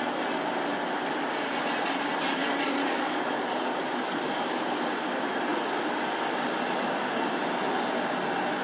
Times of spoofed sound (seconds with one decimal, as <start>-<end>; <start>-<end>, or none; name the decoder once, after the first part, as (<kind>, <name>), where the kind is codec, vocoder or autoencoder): 2.4-4.6 (codec, DAC)